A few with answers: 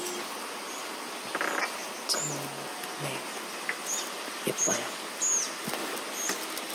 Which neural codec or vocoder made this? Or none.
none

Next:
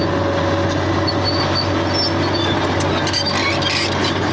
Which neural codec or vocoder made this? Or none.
none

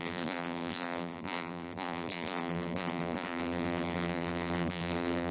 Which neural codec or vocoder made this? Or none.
vocoder, BigVGAN v2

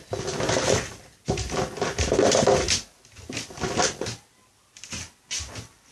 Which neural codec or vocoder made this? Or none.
none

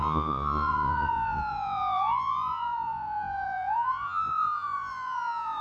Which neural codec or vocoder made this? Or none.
vocoder, Vocos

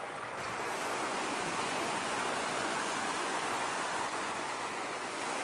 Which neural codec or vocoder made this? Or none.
vocoder, Vocos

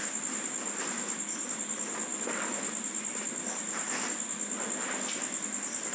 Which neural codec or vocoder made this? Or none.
vocoder, BigVGAN v2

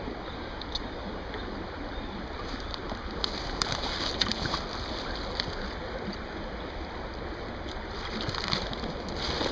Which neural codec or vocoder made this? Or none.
none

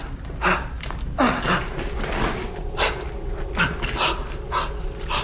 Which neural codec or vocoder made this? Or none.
none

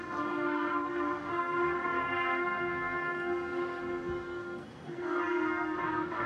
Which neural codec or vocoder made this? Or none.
codec, SNAC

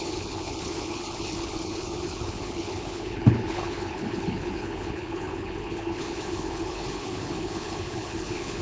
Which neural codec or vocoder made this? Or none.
codec, HILCodec